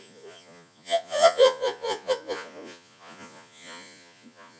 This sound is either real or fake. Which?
fake